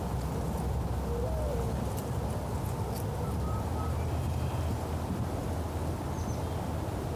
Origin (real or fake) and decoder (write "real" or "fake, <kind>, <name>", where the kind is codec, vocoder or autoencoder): real